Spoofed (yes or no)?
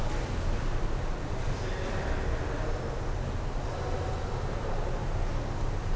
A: no